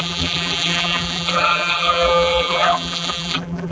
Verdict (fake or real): fake